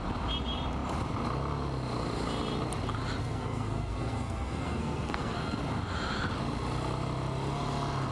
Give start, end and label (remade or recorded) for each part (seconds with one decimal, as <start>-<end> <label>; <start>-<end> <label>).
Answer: 0.0-3.2 recorded; 3.2-5.6 remade; 5.6-8.1 recorded